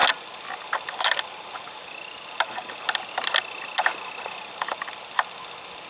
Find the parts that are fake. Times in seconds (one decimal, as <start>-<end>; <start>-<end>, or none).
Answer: none